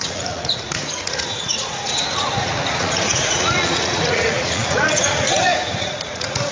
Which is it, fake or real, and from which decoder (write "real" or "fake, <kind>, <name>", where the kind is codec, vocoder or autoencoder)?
fake, vocoder, Vocos